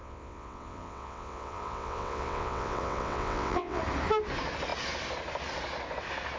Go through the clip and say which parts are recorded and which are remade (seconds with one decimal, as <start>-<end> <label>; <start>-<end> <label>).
0.0-3.8 remade; 3.8-6.4 recorded